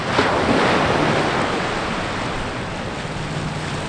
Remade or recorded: recorded